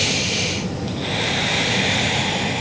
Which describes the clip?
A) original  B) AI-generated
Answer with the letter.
A